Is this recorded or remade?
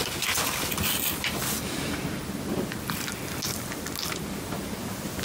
recorded